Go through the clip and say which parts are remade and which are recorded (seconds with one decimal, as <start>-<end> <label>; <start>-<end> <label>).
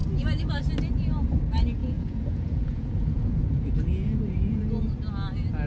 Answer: 0.0-1.8 recorded; 1.8-4.6 remade; 4.6-5.7 recorded